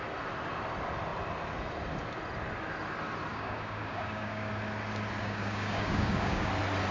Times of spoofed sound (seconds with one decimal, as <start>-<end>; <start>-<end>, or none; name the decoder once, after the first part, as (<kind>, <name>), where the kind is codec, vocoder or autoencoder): 3.3-4.5 (codec, DAC); 5.2-6.5